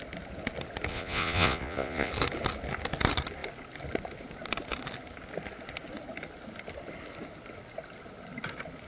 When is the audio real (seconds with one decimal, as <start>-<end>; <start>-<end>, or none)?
0.0-0.9; 2.1-8.9